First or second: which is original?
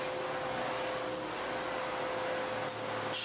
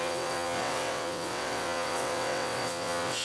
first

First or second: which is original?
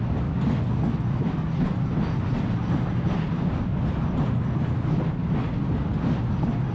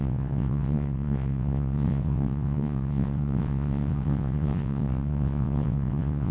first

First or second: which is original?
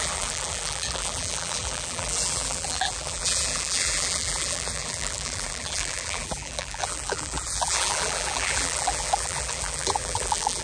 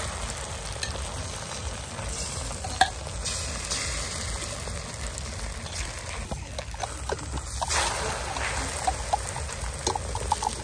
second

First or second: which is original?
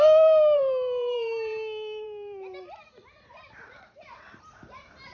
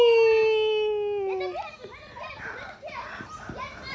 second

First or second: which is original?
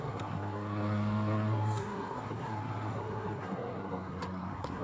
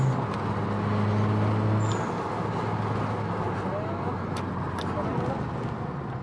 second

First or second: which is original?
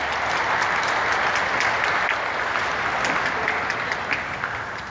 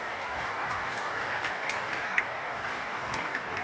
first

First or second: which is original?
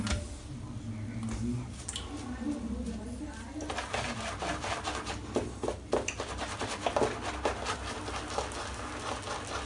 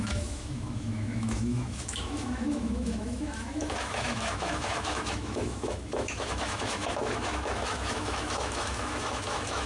first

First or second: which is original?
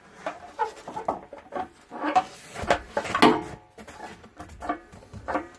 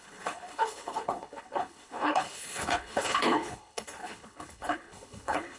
first